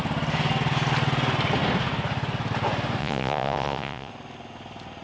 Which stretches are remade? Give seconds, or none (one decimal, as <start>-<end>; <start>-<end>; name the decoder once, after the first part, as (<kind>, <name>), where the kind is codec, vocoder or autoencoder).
3.0-4.1 (vocoder, Vocos)